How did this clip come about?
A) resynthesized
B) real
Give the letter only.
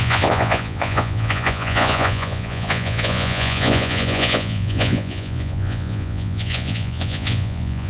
A